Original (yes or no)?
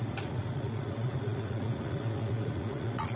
no